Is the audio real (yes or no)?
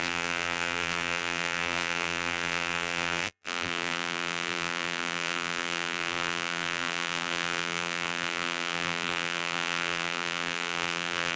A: no